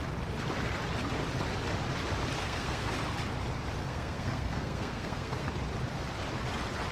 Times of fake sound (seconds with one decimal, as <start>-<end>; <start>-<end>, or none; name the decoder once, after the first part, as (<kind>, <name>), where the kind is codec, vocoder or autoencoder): 2.4-2.9 (codec, SNAC); 3.8-5.5